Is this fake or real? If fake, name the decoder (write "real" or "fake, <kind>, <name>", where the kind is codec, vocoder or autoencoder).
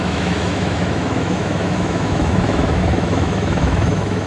fake, autoencoder, DAC-VAE